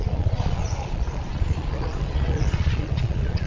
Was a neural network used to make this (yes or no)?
yes